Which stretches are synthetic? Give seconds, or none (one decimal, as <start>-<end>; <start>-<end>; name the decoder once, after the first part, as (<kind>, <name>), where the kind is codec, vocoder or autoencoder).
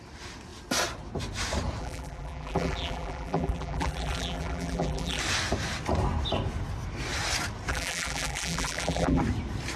1.8-5.2 (vocoder, BigVGAN v2); 7.7-9.2